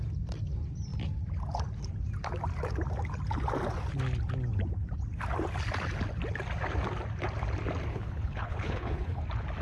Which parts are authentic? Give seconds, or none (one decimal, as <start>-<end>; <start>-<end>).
0.0-7.9; 9.2-9.6